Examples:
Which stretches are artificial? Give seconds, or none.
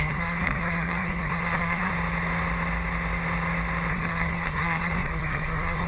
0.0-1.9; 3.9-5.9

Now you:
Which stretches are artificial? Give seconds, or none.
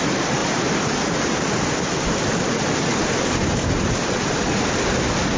none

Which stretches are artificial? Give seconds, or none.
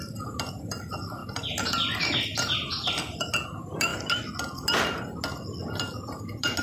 none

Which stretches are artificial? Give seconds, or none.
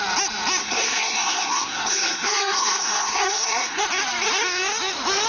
0.6-3.8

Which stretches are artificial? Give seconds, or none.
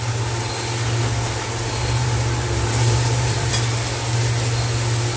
1.8-3.5